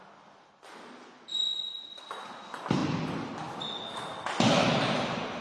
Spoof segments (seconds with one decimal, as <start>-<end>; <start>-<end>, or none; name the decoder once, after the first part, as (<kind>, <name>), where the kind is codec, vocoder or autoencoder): none